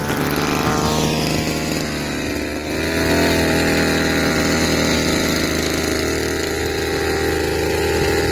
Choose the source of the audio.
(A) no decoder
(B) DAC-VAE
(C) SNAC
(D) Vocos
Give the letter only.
A